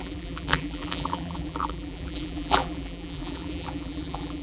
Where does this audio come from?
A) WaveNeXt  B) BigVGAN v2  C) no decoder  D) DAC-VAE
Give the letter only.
B